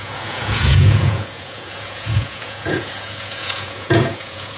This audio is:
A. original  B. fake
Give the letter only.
B